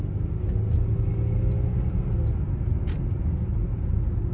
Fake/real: real